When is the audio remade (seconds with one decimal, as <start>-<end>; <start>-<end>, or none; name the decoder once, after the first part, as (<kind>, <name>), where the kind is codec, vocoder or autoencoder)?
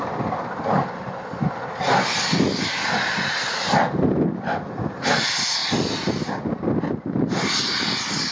none